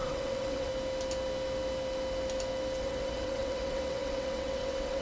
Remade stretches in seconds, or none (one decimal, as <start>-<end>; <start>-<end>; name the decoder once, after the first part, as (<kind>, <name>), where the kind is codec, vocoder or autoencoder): 0.0-0.7 (vocoder, WaveNeXt); 2.8-5.0